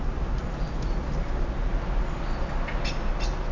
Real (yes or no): yes